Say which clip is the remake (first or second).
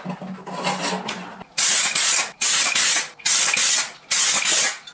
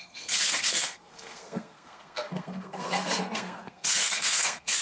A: second